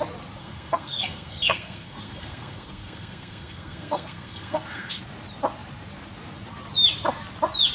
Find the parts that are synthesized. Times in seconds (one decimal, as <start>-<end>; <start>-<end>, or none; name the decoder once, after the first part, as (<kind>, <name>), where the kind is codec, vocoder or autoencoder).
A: 0.4-5.0 (codec, SNAC)